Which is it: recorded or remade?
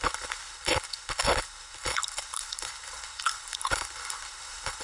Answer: remade